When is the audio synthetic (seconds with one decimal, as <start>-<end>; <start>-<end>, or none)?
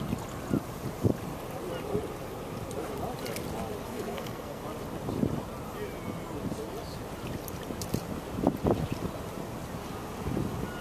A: 3.8-4.6